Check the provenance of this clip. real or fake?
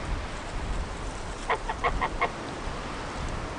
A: real